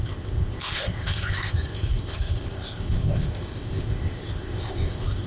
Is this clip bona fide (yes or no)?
no